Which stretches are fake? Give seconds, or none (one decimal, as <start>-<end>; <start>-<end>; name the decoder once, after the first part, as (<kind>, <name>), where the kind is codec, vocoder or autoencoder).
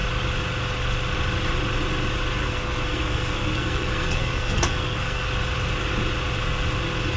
2.4-5.3 (codec, SNAC)